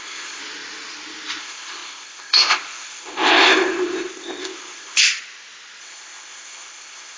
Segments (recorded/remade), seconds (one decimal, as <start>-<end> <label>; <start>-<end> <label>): 0.0-0.4 remade; 0.4-1.4 recorded; 1.4-5.0 remade; 5.0-5.8 recorded; 5.8-7.2 remade